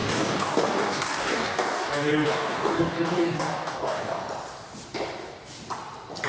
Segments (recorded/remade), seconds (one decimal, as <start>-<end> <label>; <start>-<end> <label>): 0.0-4.2 remade; 4.2-6.3 recorded